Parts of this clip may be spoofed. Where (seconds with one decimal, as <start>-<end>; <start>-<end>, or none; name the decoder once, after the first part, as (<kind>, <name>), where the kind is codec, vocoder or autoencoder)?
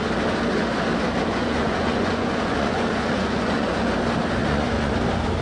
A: 1.3-3.9 (vocoder, Vocos); 4.4-4.9